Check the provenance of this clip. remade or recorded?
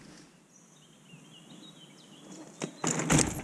recorded